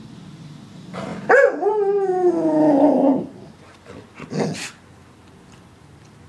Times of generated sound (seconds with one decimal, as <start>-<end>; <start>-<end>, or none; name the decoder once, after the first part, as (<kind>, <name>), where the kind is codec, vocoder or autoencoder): none